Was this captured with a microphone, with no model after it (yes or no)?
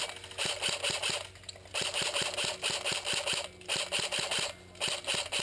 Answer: yes